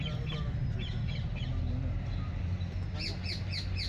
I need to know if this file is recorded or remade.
recorded